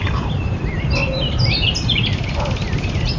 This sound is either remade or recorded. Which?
recorded